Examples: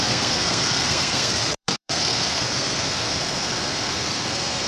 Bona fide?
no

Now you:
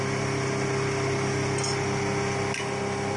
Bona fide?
yes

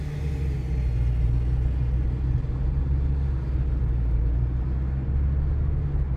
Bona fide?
yes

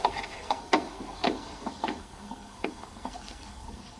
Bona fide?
no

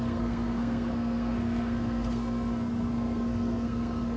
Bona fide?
no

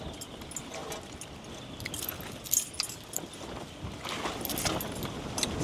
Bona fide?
yes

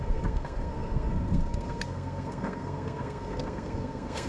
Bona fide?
no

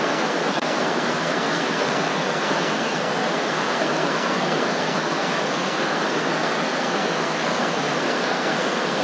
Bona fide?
no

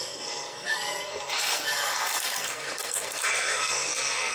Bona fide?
no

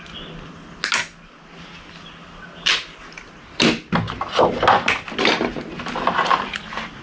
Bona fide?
yes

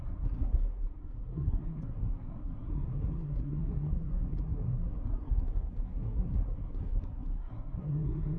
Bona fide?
no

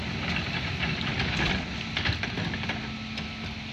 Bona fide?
yes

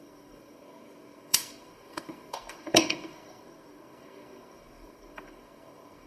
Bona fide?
no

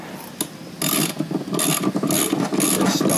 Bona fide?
yes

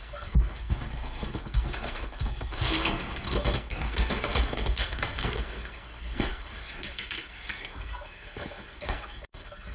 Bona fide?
no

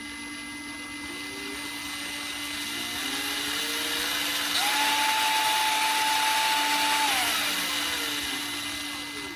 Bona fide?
yes